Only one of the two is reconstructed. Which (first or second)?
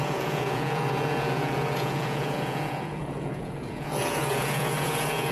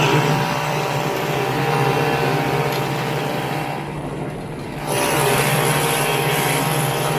first